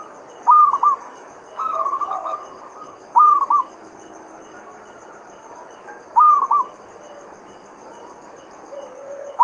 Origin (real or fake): fake